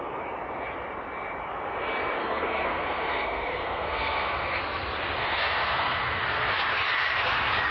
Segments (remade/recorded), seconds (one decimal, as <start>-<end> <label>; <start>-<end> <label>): 0.0-2.2 recorded; 2.2-4.6 remade; 4.6-5.2 recorded; 5.2-6.2 remade; 6.2-7.7 recorded